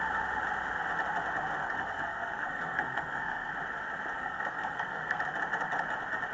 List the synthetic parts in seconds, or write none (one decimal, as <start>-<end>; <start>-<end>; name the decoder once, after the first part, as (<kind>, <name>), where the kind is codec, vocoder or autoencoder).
1.6-3.5 (codec, SNAC); 4.2-5.2